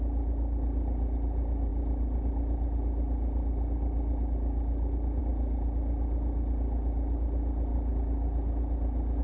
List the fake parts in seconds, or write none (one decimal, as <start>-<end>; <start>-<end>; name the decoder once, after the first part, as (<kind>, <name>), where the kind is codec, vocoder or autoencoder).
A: none